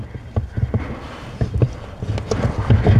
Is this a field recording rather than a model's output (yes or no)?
yes